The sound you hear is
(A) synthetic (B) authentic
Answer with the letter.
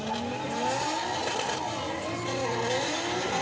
B